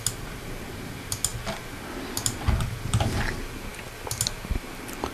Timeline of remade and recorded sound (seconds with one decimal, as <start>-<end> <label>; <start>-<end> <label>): 0.0-5.1 recorded